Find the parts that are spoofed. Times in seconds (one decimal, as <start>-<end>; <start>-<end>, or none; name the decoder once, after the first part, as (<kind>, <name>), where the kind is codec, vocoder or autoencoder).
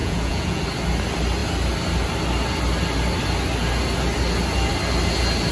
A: 0.0-0.6 (vocoder, Vocos)